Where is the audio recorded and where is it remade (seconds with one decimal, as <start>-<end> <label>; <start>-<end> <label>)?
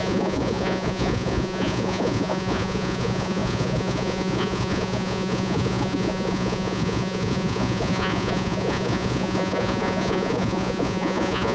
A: 0.0-11.5 remade